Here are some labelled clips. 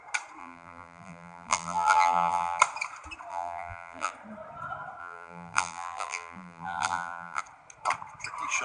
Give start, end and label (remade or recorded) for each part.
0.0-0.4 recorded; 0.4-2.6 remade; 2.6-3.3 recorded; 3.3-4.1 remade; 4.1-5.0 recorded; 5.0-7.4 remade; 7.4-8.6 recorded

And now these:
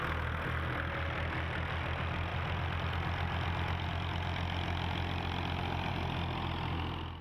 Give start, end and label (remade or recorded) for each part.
0.0-7.2 recorded

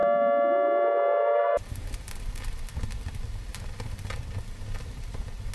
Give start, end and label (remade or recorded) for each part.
0.0-2.6 remade; 2.6-3.5 recorded; 3.5-4.1 remade; 4.1-5.5 recorded

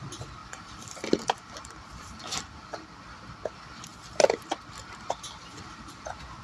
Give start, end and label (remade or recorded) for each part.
0.0-0.4 recorded; 0.4-2.4 remade; 2.4-3.9 recorded; 3.9-6.4 remade

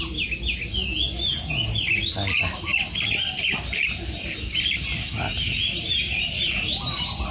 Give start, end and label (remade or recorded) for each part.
0.0-5.3 recorded; 5.3-6.6 remade; 6.6-7.3 recorded

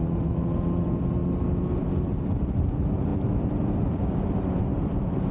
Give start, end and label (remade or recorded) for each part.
0.0-1.2 remade; 1.2-1.8 recorded; 1.8-5.3 remade

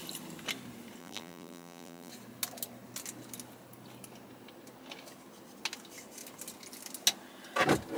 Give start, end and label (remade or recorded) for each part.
0.0-1.0 recorded; 1.0-2.1 remade; 2.1-8.0 recorded